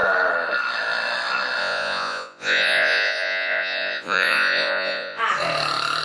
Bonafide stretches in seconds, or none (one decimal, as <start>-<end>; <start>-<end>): 0.0-1.6; 5.2-6.0